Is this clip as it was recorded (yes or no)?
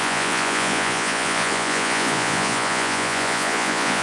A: no